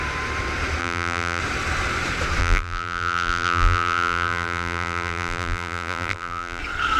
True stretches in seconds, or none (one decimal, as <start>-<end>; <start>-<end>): 0.0-0.8; 1.4-2.4; 6.6-7.0